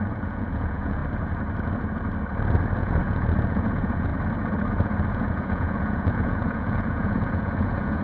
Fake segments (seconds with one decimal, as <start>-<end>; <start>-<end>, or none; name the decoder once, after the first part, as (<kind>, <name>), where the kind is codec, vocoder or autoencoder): 0.0-1.0 (vocoder, Vocos); 2.8-4.1; 5.1-8.0